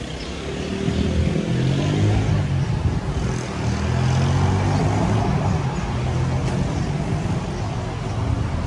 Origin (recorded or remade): recorded